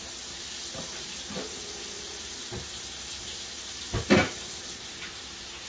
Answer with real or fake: real